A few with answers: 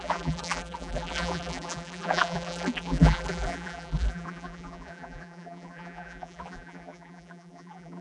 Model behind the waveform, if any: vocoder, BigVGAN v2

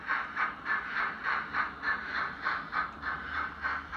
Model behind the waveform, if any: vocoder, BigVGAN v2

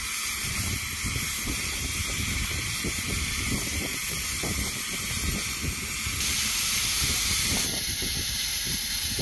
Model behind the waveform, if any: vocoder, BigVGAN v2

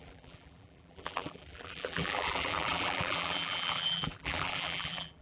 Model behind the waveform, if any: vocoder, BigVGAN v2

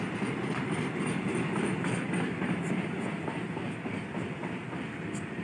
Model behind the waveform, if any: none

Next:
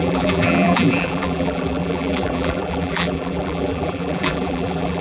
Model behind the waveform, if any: vocoder, BigVGAN v2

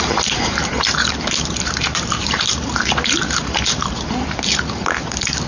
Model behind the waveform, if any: vocoder, BigVGAN v2